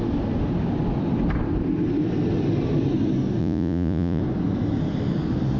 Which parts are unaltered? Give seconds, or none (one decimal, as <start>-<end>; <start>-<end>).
0.0-3.4; 4.2-5.6